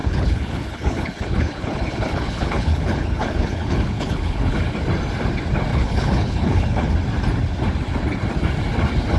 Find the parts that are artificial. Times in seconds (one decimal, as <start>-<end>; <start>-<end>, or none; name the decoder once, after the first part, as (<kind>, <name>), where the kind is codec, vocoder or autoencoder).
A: 0.0-4.6 (codec, HILCodec); 5.7-6.9